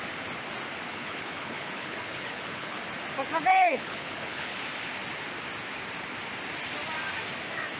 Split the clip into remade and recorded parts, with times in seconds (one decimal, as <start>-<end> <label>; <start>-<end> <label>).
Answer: 0.0-0.9 recorded; 0.9-2.8 remade; 2.8-3.5 recorded; 3.5-4.6 remade; 4.6-7.8 recorded